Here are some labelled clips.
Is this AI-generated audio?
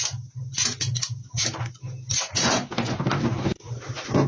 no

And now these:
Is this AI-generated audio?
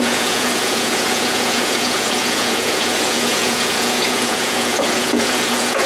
yes